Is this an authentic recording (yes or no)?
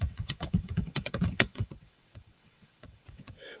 no